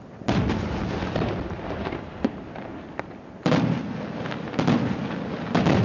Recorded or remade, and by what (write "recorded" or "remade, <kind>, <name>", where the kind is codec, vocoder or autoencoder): recorded